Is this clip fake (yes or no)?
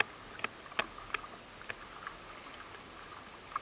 no